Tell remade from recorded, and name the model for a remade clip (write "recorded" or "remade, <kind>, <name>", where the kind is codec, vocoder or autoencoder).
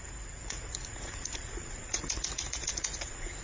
remade, vocoder, Vocos